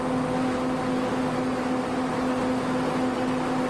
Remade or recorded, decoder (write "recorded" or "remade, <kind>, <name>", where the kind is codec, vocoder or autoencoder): recorded